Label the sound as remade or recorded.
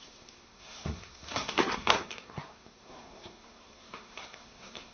remade